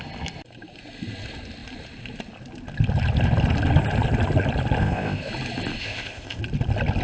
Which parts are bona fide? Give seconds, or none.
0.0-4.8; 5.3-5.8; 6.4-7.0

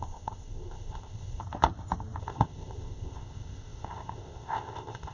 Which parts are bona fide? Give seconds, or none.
1.4-2.2

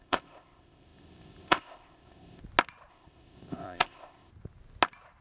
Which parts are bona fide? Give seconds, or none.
2.4-2.9; 4.3-5.2

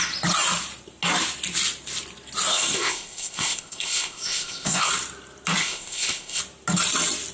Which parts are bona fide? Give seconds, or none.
0.0-2.5; 4.9-5.6; 6.4-7.3

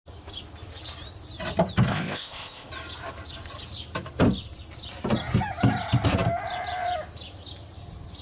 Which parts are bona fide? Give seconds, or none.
0.0-1.9; 2.7-8.2

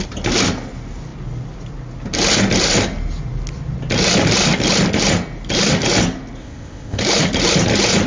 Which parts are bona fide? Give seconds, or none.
0.0-6.4; 7.0-8.1

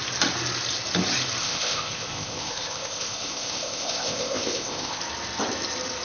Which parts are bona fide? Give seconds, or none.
0.0-1.4; 5.0-6.0

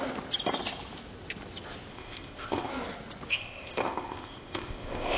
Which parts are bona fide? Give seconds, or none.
0.0-1.9; 2.7-3.3